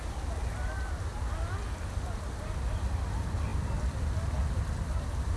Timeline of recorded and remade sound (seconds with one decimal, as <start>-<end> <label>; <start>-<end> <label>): 0.0-5.4 recorded